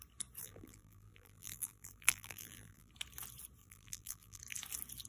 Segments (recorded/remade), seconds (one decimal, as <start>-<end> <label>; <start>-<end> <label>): 0.0-0.4 recorded; 0.4-2.9 remade; 2.9-3.6 recorded; 3.6-4.4 remade; 4.4-5.1 recorded